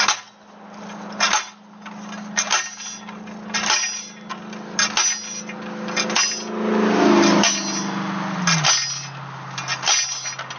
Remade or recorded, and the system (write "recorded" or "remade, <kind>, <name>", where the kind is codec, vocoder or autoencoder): recorded